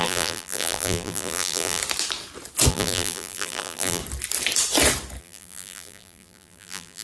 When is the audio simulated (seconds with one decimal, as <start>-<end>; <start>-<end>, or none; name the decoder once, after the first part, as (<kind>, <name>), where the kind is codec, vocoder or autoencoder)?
0.0-1.8 (vocoder, BigVGAN v2); 2.7-4.0; 5.2-7.0